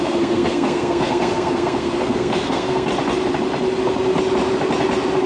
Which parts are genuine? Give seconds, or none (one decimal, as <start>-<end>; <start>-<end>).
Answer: 2.9-5.3